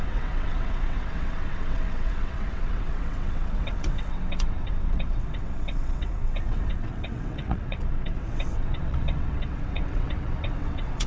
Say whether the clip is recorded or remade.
remade